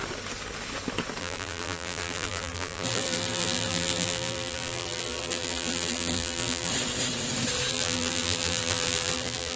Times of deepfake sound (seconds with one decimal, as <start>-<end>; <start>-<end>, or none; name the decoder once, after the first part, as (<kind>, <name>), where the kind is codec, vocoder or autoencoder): 1.2-6.7 (vocoder, BigVGAN v2); 7.7-9.6